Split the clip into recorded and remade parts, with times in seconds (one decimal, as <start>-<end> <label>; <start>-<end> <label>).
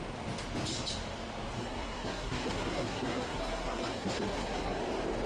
0.0-1.6 recorded; 1.6-4.8 remade; 4.8-5.3 recorded